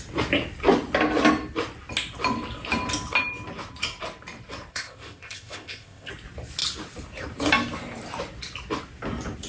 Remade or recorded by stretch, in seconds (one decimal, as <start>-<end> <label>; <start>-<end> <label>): 0.0-4.7 recorded; 4.7-6.1 remade; 6.1-9.5 recorded